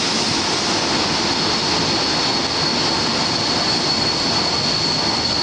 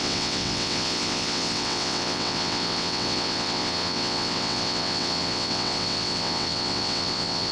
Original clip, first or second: first